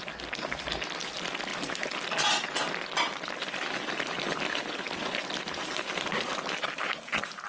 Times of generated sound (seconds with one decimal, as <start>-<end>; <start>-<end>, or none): none